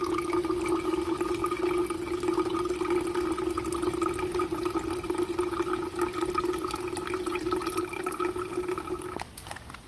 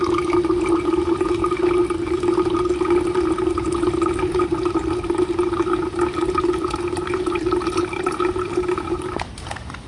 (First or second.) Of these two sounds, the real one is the first